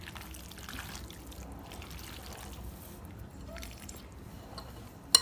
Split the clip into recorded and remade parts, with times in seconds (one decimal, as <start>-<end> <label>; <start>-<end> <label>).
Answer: 0.0-3.3 recorded; 3.3-4.0 remade; 4.0-5.2 recorded

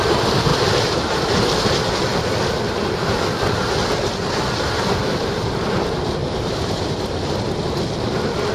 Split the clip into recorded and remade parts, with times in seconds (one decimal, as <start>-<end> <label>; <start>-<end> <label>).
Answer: 0.0-0.5 recorded; 0.5-1.2 remade; 1.2-6.2 recorded; 6.2-6.9 remade; 6.9-8.5 recorded

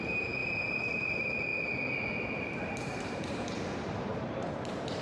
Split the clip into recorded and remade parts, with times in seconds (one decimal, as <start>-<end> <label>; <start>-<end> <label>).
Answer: 0.0-1.5 remade; 1.5-2.4 recorded; 2.4-5.0 remade

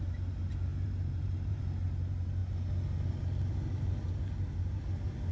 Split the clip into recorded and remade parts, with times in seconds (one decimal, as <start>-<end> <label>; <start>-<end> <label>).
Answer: 0.0-0.7 recorded; 0.7-1.6 remade; 1.6-5.3 recorded

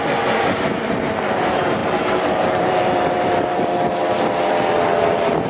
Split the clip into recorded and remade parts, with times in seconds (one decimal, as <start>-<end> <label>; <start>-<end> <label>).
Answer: 0.0-5.5 remade

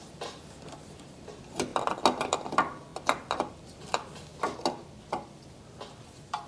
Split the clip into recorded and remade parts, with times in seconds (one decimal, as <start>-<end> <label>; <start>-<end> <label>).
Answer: 0.0-1.7 remade; 1.7-2.2 recorded; 2.2-2.9 remade; 2.9-3.5 recorded; 3.5-4.3 remade; 4.3-6.0 recorded; 6.0-6.5 remade